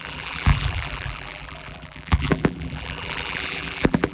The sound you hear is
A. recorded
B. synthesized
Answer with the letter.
B